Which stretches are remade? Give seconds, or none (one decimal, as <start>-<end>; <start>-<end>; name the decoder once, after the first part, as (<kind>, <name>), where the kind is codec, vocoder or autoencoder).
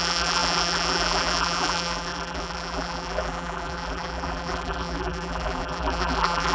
0.0-6.5 (vocoder, BigVGAN v2)